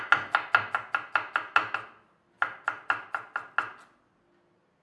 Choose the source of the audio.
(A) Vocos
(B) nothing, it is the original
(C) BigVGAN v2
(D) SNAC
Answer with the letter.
B